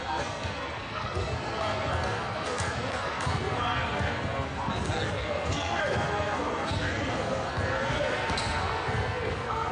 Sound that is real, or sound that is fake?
fake